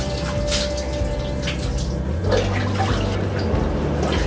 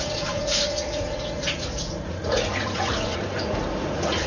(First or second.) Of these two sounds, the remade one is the second